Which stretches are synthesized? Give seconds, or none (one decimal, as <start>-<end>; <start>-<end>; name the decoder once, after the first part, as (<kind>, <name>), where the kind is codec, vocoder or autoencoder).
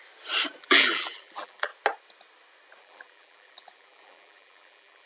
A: 0.6-1.7 (vocoder, BigVGAN v2); 2.8-5.1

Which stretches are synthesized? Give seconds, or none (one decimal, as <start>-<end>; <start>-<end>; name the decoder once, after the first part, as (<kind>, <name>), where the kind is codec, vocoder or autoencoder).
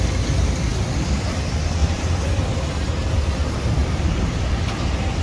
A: 0.7-1.3 (vocoder, BigVGAN v2); 1.8-3.1; 3.8-4.5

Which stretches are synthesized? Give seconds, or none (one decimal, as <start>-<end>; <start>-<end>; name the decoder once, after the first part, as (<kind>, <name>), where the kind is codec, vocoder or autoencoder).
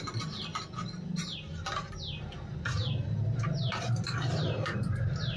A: 0.0-0.5 (vocoder, BigVGAN v2); 3.7-5.4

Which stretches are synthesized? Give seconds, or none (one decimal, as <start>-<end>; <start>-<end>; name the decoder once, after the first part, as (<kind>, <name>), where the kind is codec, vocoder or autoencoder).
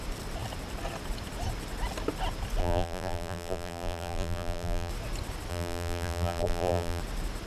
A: 2.6-4.9 (vocoder, BigVGAN v2); 5.5-7.0